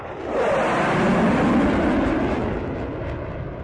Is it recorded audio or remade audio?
recorded